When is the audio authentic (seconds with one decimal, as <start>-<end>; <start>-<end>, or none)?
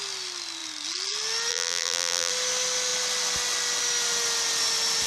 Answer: 0.0-1.5; 2.3-5.1